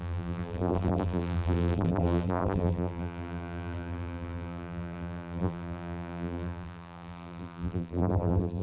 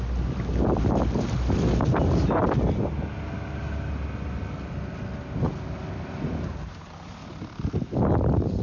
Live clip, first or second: second